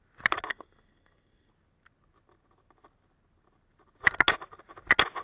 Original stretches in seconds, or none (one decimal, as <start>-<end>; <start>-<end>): 0.0-0.5; 1.5-5.2